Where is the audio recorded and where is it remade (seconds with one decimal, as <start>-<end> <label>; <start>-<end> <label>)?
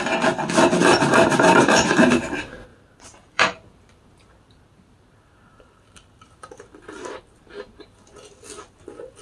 0.0-0.8 recorded; 0.8-2.2 remade; 2.2-2.7 recorded; 2.7-7.6 remade; 7.6-9.2 recorded